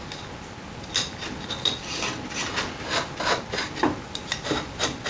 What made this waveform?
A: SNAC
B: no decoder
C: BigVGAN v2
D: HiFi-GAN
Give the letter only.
B